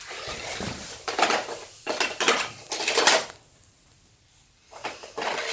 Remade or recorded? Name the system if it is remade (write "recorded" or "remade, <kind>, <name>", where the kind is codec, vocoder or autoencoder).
remade, vocoder, BigVGAN v2